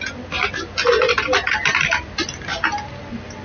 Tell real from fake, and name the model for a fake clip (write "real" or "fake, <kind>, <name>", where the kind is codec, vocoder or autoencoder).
real